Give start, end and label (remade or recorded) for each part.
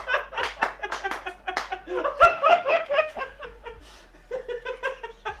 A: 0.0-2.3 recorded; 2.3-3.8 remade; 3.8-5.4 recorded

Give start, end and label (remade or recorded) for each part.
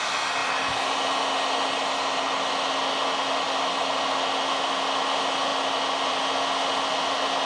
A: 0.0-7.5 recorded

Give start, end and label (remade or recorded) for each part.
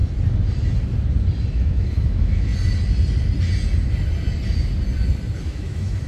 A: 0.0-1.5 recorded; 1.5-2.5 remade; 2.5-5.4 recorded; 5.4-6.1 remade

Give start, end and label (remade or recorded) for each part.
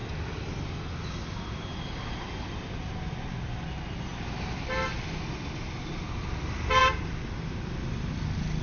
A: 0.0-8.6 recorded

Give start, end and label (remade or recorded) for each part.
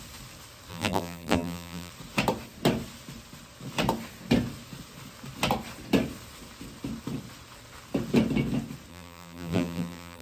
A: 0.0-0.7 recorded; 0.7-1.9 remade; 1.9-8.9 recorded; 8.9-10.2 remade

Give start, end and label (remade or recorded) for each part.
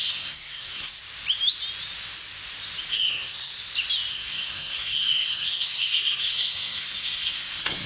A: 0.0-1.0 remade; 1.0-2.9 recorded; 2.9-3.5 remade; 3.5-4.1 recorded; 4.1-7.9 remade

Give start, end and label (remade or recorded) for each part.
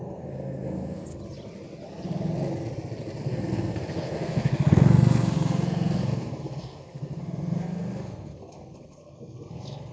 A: 0.0-1.1 remade; 1.1-3.2 recorded; 3.2-9.9 remade